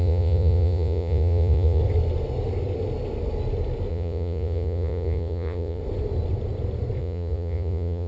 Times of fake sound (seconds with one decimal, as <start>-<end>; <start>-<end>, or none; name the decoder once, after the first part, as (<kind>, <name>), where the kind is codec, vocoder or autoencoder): 0.0-1.8 (vocoder, Vocos); 3.9-5.8; 7.0-8.1